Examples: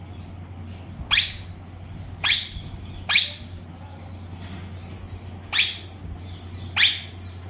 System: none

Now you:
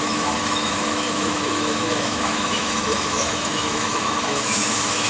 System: autoencoder, DAC-VAE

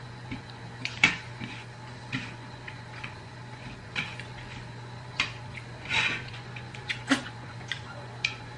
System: vocoder, Vocos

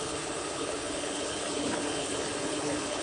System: codec, HILCodec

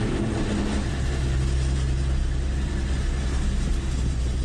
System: none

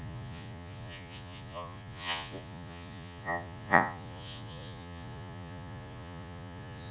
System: vocoder, Vocos